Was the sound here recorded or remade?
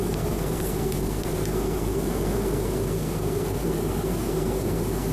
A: remade